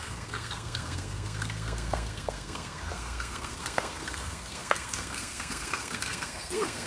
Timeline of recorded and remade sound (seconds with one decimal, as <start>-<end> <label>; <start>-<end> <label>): 0.0-6.9 remade